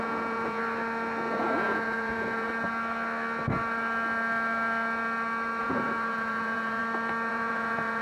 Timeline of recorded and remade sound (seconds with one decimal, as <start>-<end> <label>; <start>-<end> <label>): 0.0-0.6 remade; 0.6-1.4 recorded; 1.4-2.5 remade; 2.5-5.6 recorded; 5.6-6.8 remade; 6.8-7.3 recorded; 7.3-8.0 remade